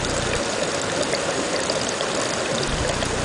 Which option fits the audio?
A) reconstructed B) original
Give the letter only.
B